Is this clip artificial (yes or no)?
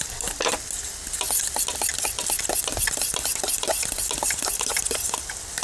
no